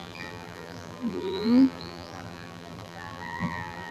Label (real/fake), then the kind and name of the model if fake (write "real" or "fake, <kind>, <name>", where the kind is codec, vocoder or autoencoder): fake, vocoder, BigVGAN v2